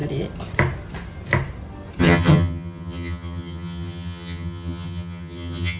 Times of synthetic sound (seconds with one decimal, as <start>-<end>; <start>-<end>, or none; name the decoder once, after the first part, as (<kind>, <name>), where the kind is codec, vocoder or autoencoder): 2.0-5.8 (vocoder, HiFi-GAN)